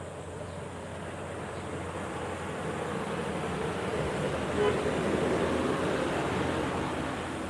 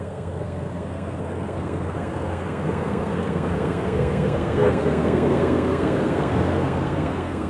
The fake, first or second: second